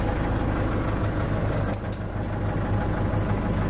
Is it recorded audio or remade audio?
recorded